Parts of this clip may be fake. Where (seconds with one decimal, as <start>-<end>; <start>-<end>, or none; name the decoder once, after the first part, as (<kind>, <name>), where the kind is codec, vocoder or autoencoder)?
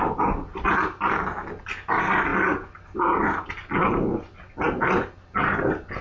none